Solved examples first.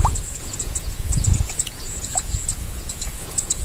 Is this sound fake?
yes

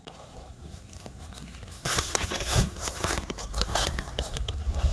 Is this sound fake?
yes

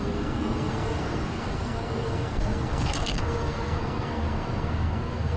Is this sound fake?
yes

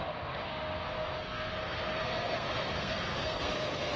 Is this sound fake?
yes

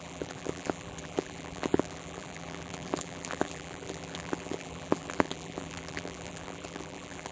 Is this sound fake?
yes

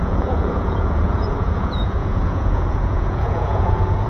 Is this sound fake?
yes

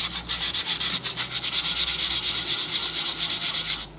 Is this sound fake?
no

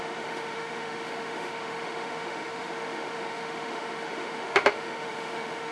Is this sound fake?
yes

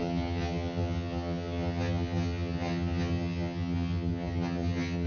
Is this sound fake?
yes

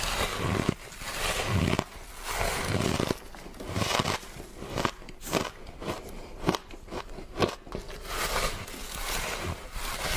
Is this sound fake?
no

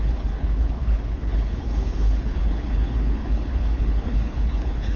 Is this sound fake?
yes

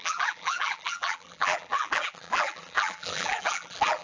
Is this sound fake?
yes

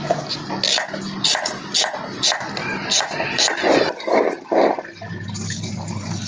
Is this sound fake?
no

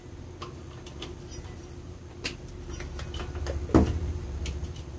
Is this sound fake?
no